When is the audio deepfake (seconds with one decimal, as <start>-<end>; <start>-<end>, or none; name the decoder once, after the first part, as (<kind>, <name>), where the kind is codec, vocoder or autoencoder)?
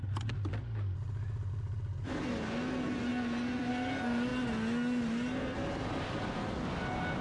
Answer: none